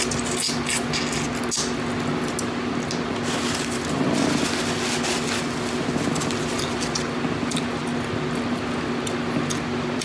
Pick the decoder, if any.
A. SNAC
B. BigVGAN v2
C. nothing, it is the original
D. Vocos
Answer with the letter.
C